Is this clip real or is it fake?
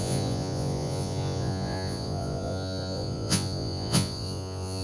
fake